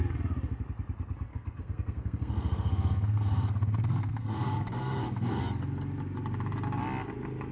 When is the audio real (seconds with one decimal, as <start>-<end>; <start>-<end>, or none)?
0.0-1.3; 5.4-7.5